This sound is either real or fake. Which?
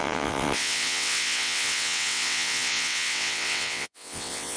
fake